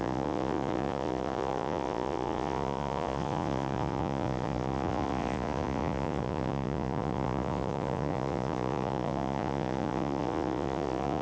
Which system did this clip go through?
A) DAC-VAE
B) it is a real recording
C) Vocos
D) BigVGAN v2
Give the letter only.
C